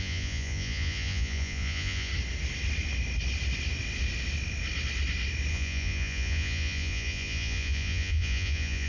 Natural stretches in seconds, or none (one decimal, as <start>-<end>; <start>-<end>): 2.1-5.5